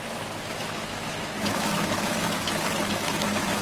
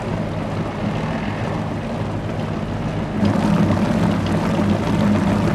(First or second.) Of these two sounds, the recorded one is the second